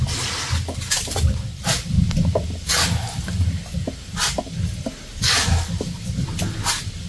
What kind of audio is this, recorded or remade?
recorded